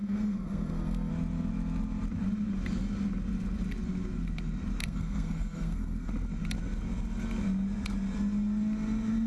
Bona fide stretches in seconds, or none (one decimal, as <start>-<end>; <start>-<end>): 1.1-4.8; 6.1-9.3